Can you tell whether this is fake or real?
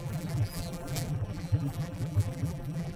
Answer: fake